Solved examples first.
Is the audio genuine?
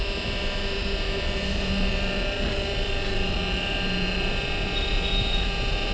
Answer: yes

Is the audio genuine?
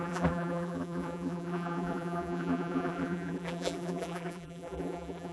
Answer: no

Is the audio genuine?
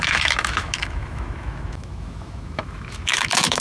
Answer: no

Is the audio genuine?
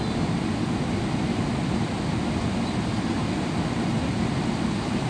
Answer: yes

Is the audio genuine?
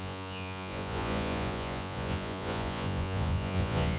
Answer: no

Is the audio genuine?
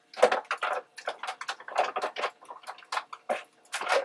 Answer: yes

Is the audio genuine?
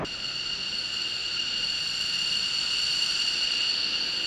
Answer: yes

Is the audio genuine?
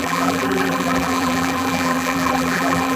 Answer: no